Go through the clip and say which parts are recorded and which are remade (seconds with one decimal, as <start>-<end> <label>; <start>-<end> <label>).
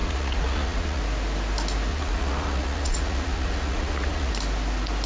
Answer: 0.0-1.0 remade; 1.0-1.9 recorded; 1.9-4.3 remade; 4.3-5.1 recorded